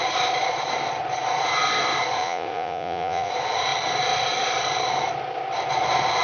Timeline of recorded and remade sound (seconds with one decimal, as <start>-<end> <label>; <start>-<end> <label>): 0.0-2.2 recorded; 2.2-3.3 remade; 3.3-6.2 recorded